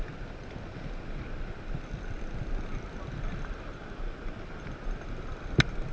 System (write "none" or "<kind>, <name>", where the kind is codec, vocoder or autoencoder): none